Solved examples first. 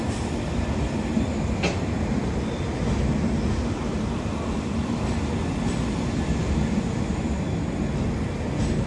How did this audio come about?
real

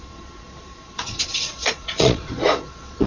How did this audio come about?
fake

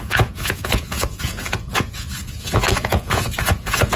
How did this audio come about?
fake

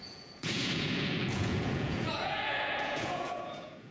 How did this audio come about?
fake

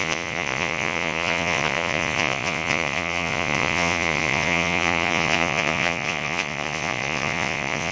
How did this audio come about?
fake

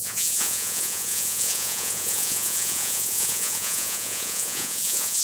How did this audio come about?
fake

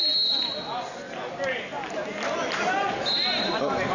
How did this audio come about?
real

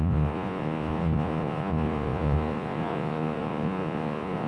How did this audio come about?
fake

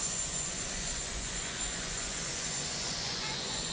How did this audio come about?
fake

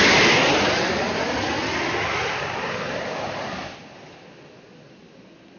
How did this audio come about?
real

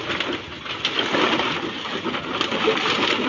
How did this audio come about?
real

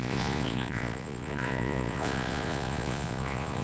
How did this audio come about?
fake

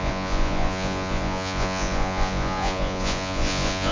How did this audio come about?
fake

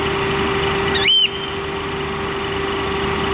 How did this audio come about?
real